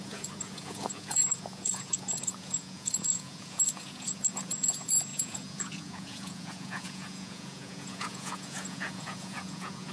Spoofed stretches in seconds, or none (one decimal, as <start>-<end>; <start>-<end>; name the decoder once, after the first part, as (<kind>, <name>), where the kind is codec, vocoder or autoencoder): 0.0-9.9 (vocoder, Vocos)